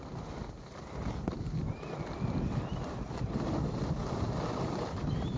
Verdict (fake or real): real